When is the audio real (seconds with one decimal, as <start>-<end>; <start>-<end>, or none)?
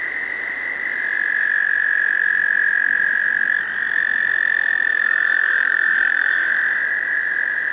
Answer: 0.0-4.9; 6.5-7.7